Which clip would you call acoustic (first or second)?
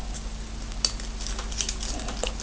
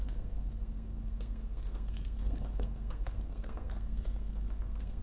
first